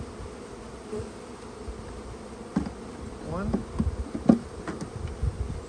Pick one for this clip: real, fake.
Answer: real